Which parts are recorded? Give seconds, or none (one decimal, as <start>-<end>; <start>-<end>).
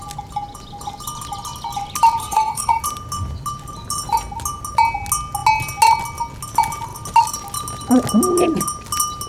0.0-2.2; 2.8-9.3